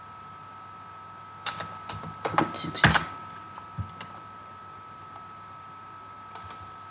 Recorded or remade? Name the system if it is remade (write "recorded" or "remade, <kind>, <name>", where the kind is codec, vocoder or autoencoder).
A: recorded